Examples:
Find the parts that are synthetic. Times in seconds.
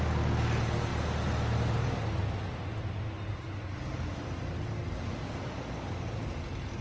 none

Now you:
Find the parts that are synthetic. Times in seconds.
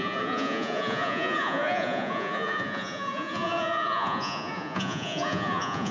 0.0-5.9 (vocoder, Vocos)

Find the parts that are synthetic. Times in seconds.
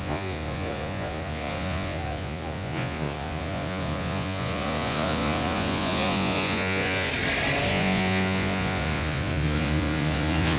0.0-7.1 (vocoder, Vocos); 7.7-10.6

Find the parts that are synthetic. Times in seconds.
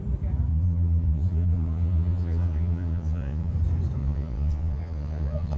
0.5-3.5 (vocoder, Vocos); 4.0-5.6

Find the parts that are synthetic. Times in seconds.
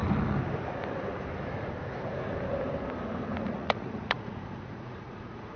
3.4-5.6 (vocoder, Vocos)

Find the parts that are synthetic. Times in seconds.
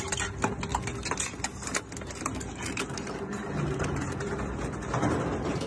none